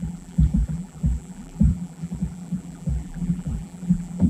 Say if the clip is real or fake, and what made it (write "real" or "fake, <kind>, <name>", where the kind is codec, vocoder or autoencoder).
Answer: fake, vocoder, BigVGAN v2